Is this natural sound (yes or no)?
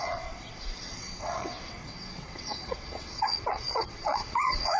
no